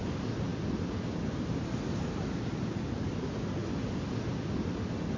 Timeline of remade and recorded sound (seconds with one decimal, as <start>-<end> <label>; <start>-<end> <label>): 0.0-5.2 recorded